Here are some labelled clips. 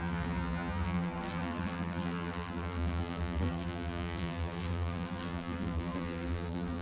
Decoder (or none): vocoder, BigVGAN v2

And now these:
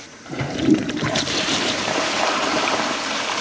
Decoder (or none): vocoder, BigVGAN v2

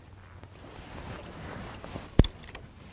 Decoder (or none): none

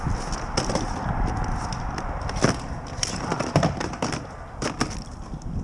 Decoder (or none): vocoder, BigVGAN v2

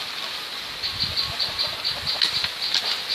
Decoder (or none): none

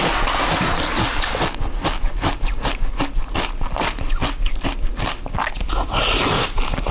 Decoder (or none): none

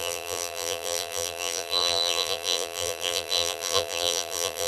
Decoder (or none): vocoder, BigVGAN v2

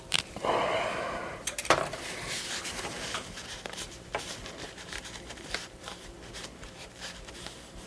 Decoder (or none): vocoder, BigVGAN v2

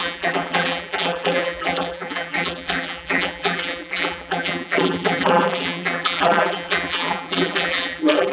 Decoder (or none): vocoder, BigVGAN v2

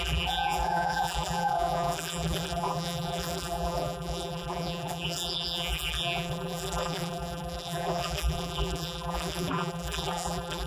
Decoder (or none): vocoder, BigVGAN v2